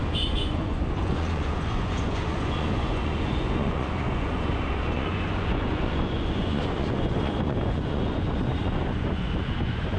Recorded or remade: remade